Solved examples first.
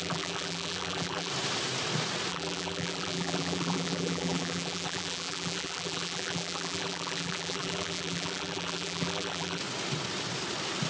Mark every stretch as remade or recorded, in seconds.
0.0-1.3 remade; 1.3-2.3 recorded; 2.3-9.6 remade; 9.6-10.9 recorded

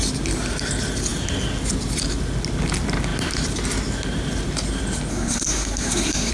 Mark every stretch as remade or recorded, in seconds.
0.0-5.1 recorded; 5.1-6.3 remade

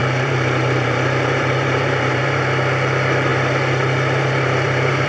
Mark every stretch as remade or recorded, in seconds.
0.0-2.4 remade; 2.4-3.3 recorded; 3.3-5.1 remade

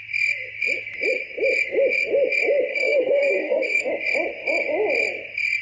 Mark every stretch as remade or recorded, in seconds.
0.0-2.7 recorded; 2.7-3.9 remade; 3.9-5.6 recorded

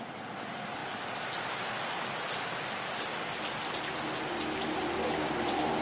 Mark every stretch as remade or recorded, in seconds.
0.0-5.8 recorded

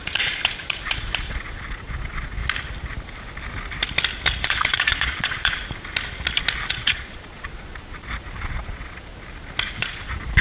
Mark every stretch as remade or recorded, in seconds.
0.0-2.4 remade; 2.4-4.4 recorded; 4.4-5.6 remade; 5.6-6.7 recorded; 6.7-9.1 remade; 9.1-9.7 recorded; 9.7-10.4 remade